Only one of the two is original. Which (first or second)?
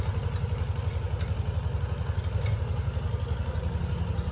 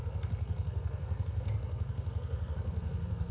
first